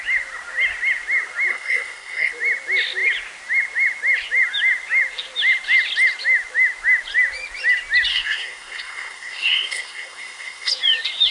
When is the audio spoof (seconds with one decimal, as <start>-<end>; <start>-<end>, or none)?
1.5-2.3; 8.1-10.7

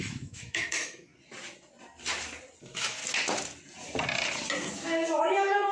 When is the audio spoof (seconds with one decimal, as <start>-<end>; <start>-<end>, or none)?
0.0-1.1; 2.6-3.0; 5.2-5.7